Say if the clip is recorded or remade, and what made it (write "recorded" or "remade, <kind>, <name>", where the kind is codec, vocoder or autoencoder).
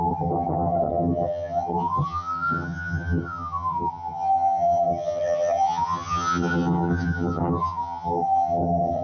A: remade, vocoder, HiFi-GAN